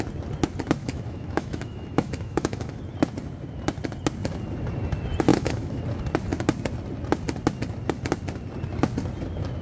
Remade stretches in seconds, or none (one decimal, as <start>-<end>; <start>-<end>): 0.8-2.8; 5.3-5.8